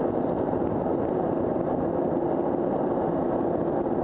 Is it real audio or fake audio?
real